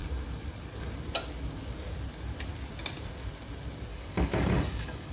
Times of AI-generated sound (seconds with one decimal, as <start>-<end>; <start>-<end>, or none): 3.9-5.1